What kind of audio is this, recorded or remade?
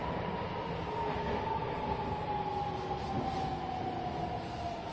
recorded